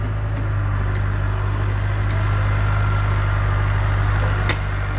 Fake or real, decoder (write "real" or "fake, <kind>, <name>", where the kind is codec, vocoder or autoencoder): real